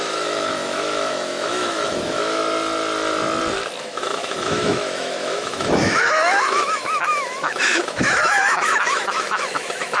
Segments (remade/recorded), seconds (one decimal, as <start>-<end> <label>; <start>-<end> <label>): 0.0-2.4 remade; 2.4-3.8 recorded; 3.8-10.0 remade